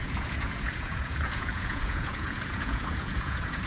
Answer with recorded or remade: remade